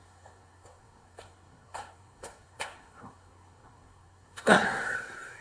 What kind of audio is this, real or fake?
fake